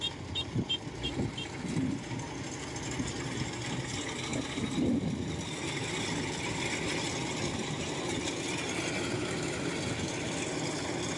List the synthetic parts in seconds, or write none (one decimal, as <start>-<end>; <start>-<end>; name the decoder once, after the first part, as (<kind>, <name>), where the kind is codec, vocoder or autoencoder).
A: none